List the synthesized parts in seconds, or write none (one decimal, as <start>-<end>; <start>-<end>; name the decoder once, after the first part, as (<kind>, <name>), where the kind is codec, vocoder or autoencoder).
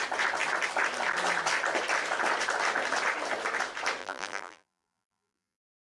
4.0-5.8 (vocoder, BigVGAN v2)